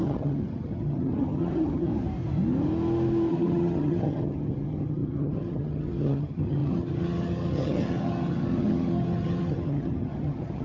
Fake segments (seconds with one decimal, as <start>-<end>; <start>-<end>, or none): 0.0-1.9; 3.3-10.6